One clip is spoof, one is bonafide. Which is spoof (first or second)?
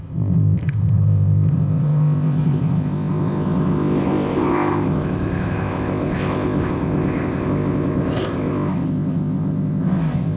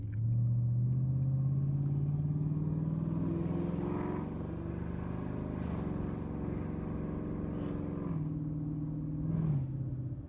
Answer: first